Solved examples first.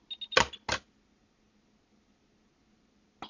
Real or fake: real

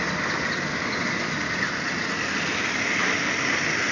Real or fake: real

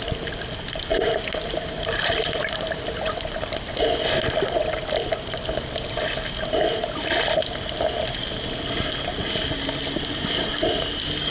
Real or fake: real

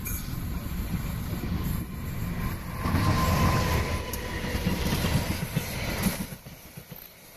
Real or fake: real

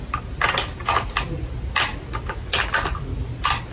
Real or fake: real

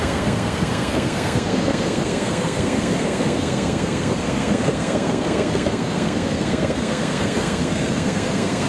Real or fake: fake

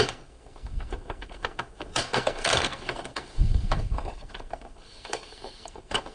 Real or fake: fake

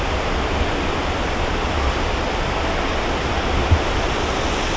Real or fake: real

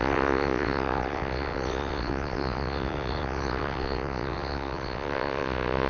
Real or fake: fake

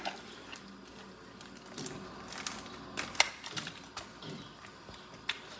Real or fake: real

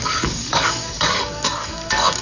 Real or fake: fake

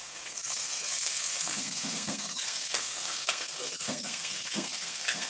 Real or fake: fake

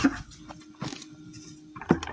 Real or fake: real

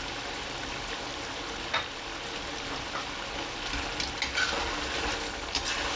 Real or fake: real